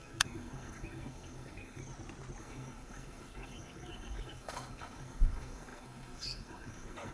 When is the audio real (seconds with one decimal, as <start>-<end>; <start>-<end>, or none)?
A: 1.8-2.4